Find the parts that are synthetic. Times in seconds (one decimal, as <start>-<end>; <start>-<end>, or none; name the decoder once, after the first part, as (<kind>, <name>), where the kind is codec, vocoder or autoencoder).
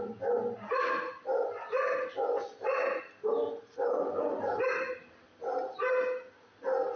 none